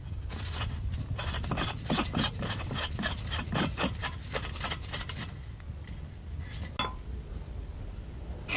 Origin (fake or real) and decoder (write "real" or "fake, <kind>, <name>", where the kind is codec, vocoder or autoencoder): real